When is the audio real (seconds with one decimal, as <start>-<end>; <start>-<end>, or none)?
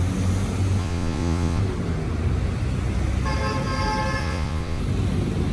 0.0-0.8; 1.6-4.2; 4.8-5.5